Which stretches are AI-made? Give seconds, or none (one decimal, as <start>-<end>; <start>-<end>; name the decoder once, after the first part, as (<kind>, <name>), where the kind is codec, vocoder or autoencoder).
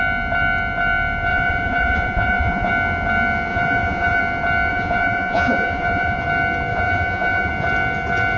1.3-2.7 (vocoder, Vocos); 3.5-4.2; 4.7-6.2; 6.7-7.5